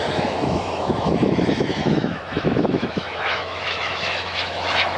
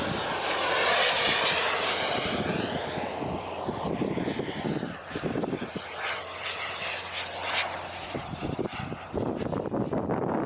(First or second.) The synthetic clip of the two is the first